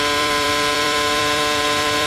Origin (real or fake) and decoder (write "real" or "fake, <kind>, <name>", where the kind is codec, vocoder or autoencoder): fake, vocoder, BigVGAN v2